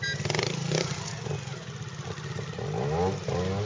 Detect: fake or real real